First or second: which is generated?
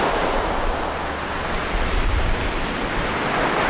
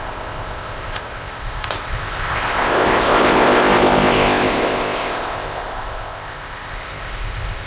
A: second